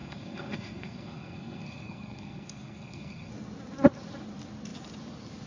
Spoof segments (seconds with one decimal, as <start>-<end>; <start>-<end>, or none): 0.0-3.3